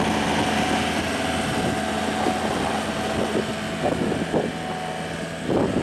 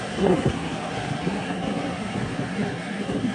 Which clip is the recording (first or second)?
first